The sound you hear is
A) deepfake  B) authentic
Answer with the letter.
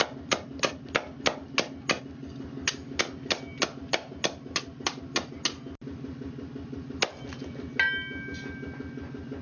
B